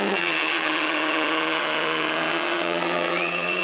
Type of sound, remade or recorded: remade